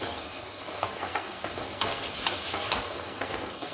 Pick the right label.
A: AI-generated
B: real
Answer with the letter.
A